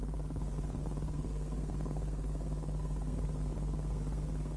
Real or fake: fake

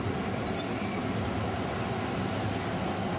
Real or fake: real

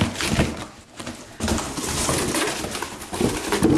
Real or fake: real